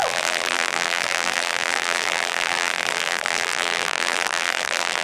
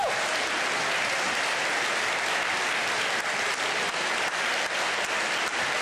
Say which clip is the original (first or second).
second